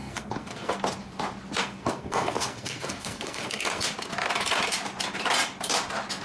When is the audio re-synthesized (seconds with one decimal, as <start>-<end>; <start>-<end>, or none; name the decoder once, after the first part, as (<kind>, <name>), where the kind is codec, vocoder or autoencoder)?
0.0-0.8 (codec, SNAC); 1.6-3.8

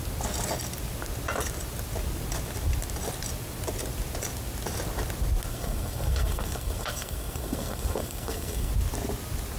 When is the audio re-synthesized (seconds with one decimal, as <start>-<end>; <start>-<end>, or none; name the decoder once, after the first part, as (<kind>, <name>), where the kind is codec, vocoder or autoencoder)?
5.5-8.7 (codec, SNAC)

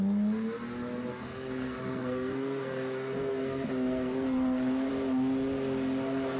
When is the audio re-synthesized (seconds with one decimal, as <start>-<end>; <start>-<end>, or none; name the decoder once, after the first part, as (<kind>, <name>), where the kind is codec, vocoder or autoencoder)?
1.1-4.9 (codec, SNAC)

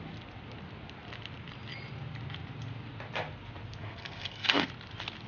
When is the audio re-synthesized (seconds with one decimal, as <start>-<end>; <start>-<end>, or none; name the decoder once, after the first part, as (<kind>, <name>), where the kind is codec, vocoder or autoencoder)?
3.8-4.7 (codec, SNAC)

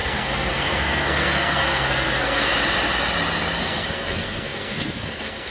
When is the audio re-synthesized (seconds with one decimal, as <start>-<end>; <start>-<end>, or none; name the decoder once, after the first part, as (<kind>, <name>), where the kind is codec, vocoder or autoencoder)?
0.0-2.5 (codec, SNAC); 3.6-5.5

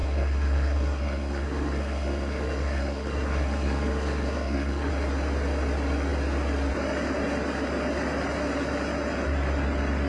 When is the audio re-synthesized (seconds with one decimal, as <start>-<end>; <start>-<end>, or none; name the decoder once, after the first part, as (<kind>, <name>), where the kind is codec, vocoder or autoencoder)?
0.0-4.9 (codec, SNAC)

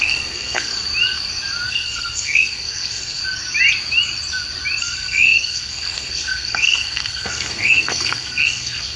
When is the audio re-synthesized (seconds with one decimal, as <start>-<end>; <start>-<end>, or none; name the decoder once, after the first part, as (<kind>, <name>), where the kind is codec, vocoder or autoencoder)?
0.0-0.7 (codec, SNAC); 1.7-3.2; 4.8-9.0

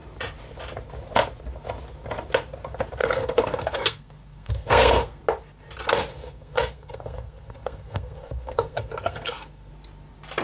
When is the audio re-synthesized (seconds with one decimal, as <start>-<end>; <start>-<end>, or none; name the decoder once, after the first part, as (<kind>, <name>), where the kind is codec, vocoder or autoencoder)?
3.0-5.2 (codec, SNAC); 6.1-9.7